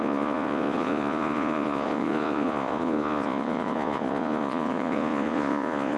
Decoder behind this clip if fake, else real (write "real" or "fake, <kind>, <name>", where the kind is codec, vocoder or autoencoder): fake, vocoder, Vocos